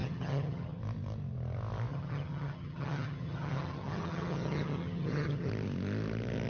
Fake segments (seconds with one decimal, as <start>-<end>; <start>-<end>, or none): 0.0-0.8; 1.9-5.5